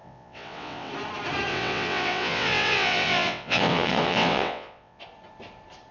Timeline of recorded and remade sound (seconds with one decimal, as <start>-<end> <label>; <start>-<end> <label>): 0.0-0.9 remade; 0.9-1.5 recorded; 1.5-5.0 remade; 5.0-5.9 recorded